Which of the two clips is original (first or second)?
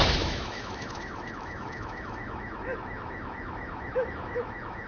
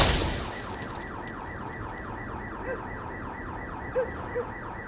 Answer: second